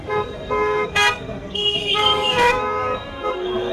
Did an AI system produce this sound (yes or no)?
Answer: yes